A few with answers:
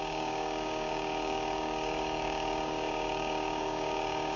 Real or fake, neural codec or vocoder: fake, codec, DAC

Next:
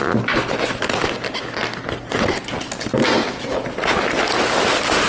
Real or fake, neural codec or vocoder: real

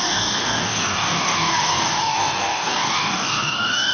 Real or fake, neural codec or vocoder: fake, codec, DAC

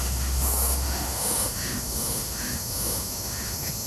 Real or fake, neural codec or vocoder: fake, autoencoder, DAC-VAE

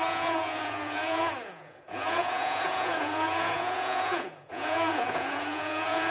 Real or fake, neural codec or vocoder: fake, vocoder, Vocos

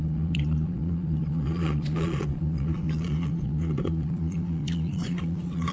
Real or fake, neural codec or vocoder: fake, vocoder, Vocos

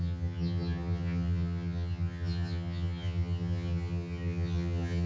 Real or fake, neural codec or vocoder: fake, vocoder, HiFi-GAN